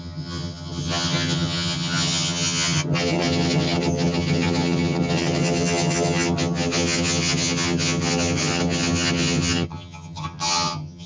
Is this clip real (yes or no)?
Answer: no